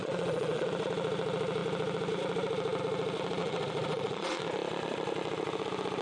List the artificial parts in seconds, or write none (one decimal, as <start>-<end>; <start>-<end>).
0.0-0.7; 3.4-4.4